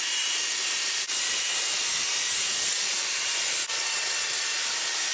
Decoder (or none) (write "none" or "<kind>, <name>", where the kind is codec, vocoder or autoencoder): none